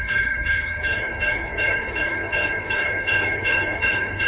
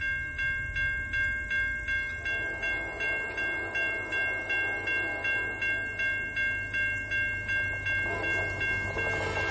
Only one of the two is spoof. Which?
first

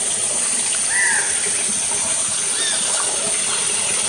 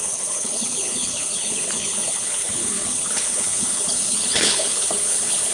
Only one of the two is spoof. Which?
second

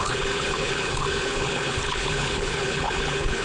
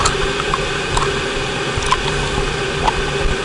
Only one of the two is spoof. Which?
first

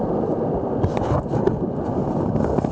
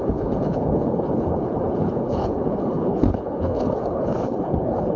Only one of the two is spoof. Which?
second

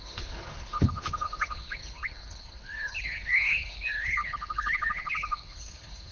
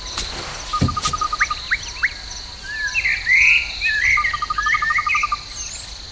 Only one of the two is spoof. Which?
first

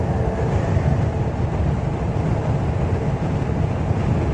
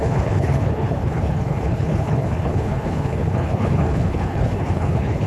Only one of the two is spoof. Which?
second